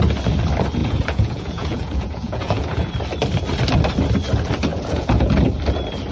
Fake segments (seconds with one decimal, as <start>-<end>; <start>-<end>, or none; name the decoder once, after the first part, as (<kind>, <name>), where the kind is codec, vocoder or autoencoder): 0.8-2.9 (vocoder, Vocos); 4.7-5.4